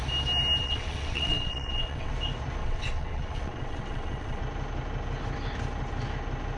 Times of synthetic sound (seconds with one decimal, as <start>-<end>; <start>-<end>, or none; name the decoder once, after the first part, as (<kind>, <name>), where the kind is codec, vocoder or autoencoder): 0.6-2.1 (vocoder, WaveNeXt); 2.6-4.4